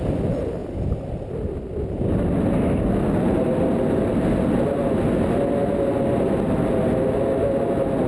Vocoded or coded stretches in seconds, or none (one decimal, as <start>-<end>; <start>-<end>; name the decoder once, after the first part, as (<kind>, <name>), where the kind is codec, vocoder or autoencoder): none